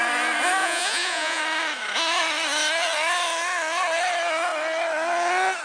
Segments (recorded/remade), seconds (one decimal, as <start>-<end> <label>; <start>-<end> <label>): 0.0-0.6 recorded; 0.6-1.4 remade; 1.4-5.6 recorded